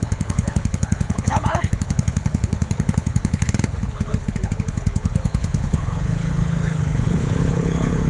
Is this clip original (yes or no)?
no